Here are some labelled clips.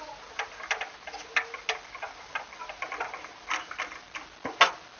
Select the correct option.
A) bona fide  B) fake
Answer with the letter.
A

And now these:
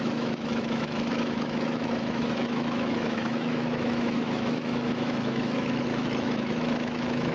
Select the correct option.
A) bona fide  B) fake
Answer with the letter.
B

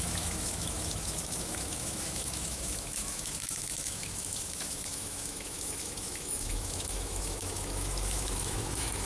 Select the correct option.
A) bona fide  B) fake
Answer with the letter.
B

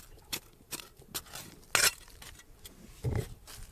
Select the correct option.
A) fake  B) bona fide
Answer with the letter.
B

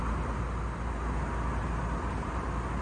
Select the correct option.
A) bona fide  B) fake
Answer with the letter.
A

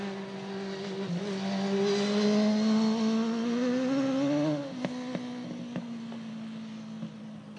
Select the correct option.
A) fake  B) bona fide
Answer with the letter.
B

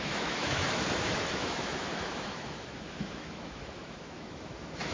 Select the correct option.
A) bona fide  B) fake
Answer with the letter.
B